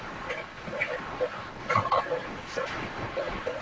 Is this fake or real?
fake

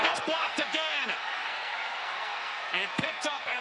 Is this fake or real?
fake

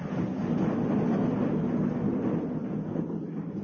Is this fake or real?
real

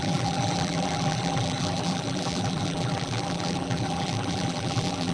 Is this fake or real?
fake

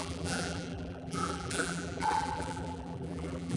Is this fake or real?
fake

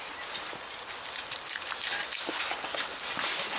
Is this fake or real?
real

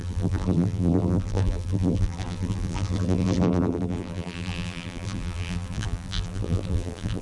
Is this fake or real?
fake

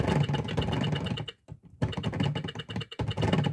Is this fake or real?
real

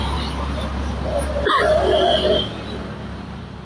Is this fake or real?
real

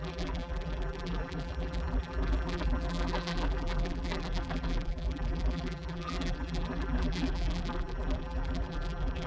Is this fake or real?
fake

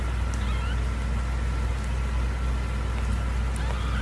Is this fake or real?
real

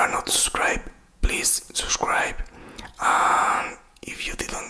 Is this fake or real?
fake